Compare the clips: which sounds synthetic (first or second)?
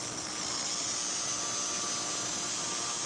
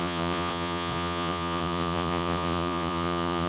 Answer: second